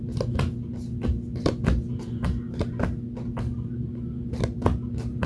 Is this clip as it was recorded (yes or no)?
yes